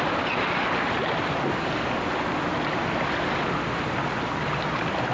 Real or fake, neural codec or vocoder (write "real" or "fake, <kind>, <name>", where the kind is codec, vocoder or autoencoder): real